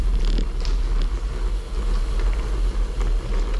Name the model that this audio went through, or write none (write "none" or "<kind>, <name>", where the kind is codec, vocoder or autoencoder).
none